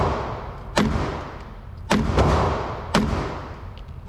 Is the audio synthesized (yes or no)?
no